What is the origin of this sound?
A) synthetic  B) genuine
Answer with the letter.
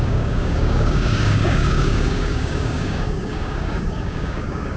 A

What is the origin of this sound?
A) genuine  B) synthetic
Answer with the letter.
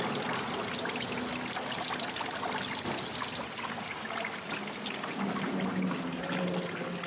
A